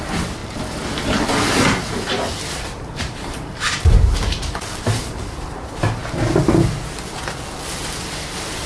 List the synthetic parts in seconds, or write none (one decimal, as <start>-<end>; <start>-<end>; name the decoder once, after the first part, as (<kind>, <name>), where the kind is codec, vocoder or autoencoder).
0.0-0.4 (vocoder, BigVGAN v2); 2.5-6.0

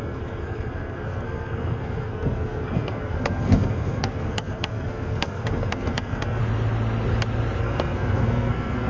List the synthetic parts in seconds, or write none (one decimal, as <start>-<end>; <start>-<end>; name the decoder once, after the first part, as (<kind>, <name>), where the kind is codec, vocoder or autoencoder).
0.0-6.4 (codec, SNAC); 7.6-8.9